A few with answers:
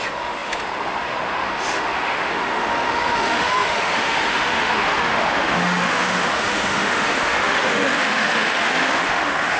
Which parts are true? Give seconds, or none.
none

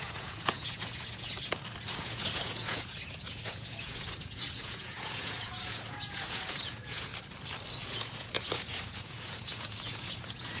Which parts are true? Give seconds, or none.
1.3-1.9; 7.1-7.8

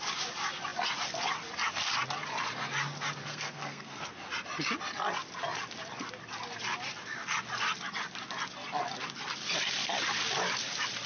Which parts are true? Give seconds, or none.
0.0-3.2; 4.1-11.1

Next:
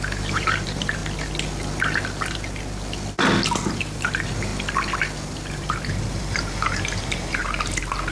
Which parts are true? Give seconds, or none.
1.0-3.7; 4.5-5.5; 7.4-8.1

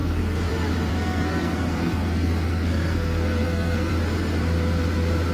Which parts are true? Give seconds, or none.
0.5-0.9; 3.9-5.3

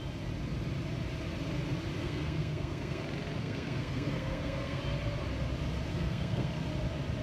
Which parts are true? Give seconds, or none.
0.0-2.0; 3.0-3.4; 4.8-5.9; 6.5-7.2

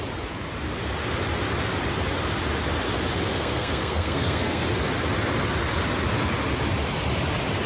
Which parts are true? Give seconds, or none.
0.0-3.3; 4.6-7.7